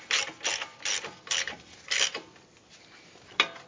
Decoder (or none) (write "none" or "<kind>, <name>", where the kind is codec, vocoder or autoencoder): none